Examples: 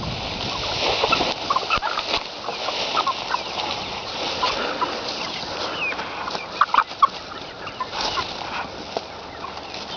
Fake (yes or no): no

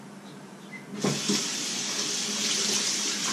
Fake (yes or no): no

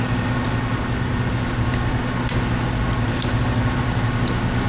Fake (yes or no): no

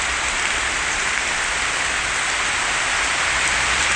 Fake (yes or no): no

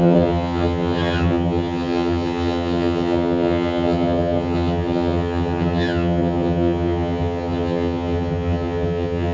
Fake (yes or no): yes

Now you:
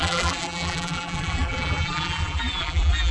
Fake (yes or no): yes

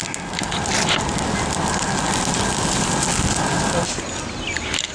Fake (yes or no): no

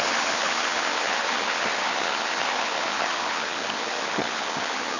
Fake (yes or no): yes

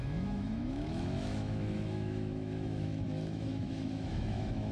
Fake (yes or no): yes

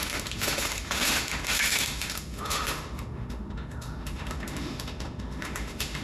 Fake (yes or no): yes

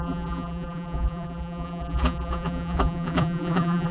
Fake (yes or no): yes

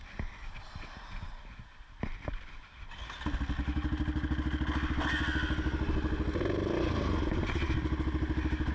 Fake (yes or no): no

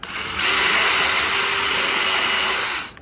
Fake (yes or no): no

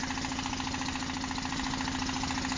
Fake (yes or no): no